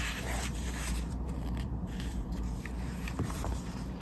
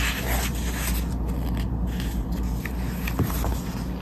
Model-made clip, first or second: first